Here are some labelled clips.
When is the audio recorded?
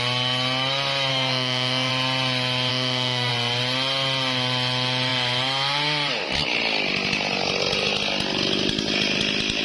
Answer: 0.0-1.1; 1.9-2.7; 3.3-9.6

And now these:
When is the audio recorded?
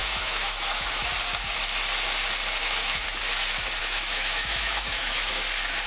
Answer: 1.1-2.6; 3.2-3.8; 5.3-5.9